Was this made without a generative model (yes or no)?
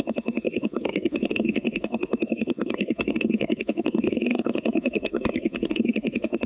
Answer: no